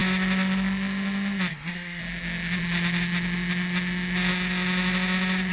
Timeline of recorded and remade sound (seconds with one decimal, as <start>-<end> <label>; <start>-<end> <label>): 0.0-1.5 recorded; 1.5-2.0 remade; 2.0-5.5 recorded